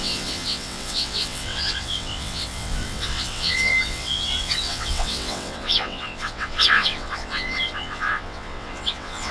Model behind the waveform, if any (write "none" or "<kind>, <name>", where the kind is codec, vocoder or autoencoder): vocoder, WaveNeXt